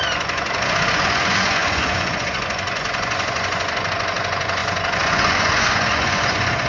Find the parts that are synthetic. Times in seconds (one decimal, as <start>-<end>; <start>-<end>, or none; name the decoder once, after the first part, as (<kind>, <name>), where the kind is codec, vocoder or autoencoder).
0.0-6.7 (vocoder, Vocos)